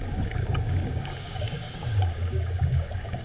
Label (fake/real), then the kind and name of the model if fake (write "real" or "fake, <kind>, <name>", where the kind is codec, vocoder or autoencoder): fake, codec, DAC